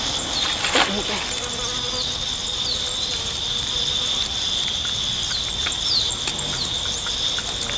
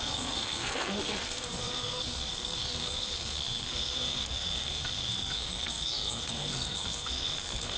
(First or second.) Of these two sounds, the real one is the first